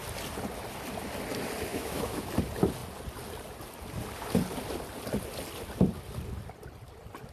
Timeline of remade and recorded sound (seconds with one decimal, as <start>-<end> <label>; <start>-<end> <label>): 0.0-1.7 recorded; 1.7-2.3 remade; 2.3-7.3 recorded